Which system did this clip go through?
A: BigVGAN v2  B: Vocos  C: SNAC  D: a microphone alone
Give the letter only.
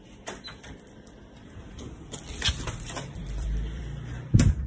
A